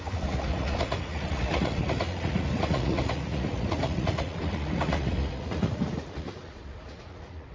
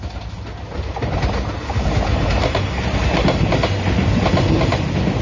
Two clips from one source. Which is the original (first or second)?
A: second